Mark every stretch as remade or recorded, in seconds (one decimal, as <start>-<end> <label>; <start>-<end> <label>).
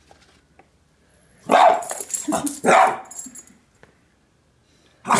0.0-1.1 recorded; 1.1-2.0 remade; 2.0-5.2 recorded